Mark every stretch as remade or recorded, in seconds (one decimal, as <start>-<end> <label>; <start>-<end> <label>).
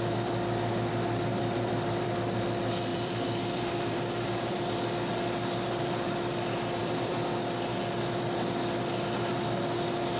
0.0-1.3 recorded; 1.3-2.4 remade; 2.4-2.9 recorded; 2.9-4.7 remade; 4.7-6.8 recorded; 6.8-7.3 remade; 7.3-10.2 recorded